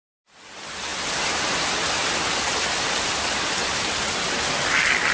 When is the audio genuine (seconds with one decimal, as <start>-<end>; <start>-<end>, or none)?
0.0-5.1